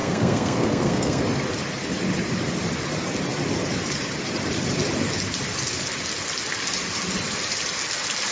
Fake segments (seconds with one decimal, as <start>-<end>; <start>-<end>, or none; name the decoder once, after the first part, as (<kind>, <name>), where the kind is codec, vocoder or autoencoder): 0.0-1.2 (codec, SNAC)